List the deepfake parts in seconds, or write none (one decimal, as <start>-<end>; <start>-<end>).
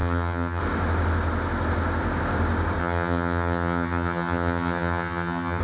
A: 0.0-0.6; 2.8-5.6